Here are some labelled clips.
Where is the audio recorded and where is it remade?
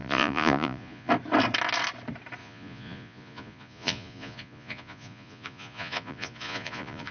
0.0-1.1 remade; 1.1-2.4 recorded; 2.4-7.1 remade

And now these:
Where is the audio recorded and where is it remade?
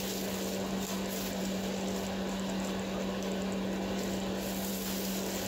0.0-5.5 recorded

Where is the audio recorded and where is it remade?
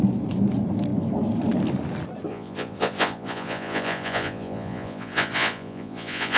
0.0-2.3 recorded; 2.3-6.4 remade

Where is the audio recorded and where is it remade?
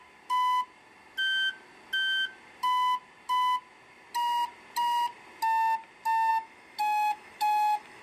0.0-6.3 recorded; 6.3-8.0 remade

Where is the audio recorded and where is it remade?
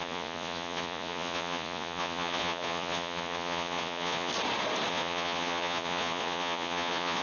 0.0-4.3 remade; 4.3-4.9 recorded; 4.9-7.2 remade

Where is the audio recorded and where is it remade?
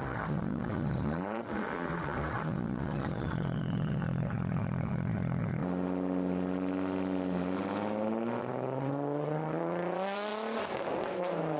0.0-5.6 remade; 5.6-8.4 recorded; 8.4-10.3 remade; 10.3-11.6 recorded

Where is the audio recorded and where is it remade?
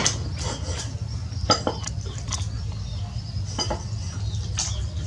0.0-5.1 recorded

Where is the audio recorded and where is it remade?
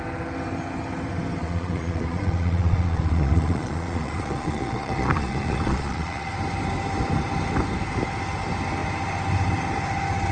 0.0-1.4 recorded; 1.4-6.3 remade; 6.3-10.3 recorded